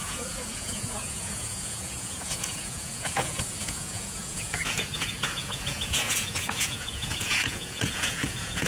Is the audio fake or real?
fake